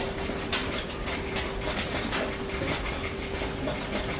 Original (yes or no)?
yes